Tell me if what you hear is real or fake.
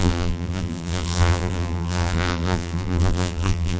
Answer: fake